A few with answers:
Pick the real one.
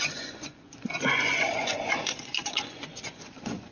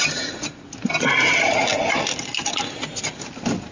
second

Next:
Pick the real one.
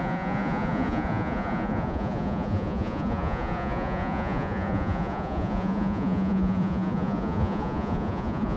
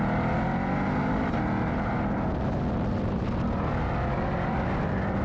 second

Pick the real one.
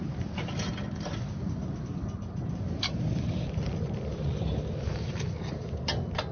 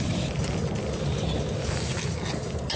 second